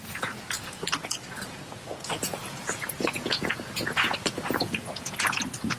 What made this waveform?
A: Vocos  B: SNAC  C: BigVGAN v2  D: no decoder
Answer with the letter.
A